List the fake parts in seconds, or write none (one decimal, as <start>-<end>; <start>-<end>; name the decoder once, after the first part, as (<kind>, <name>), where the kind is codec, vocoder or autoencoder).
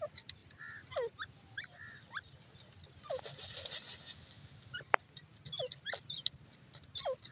none